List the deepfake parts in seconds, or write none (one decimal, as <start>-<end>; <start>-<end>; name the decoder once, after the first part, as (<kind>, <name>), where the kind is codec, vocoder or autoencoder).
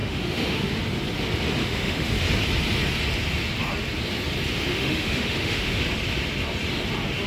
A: 0.0-0.8 (autoencoder, DAC-VAE); 1.6-2.1; 4.7-5.8